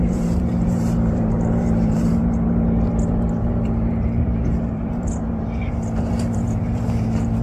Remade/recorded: remade